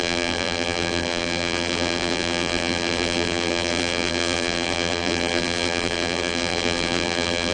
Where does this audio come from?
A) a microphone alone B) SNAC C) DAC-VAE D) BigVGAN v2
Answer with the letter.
D